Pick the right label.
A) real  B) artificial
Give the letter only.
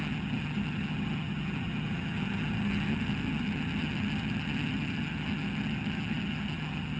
B